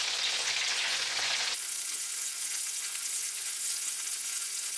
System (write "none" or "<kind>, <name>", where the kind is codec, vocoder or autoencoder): vocoder, Vocos